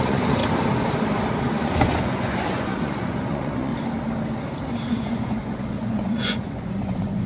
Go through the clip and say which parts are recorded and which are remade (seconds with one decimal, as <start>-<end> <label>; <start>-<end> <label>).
0.0-0.4 remade; 0.4-1.5 recorded; 1.5-3.7 remade; 3.7-4.9 recorded; 4.9-7.3 remade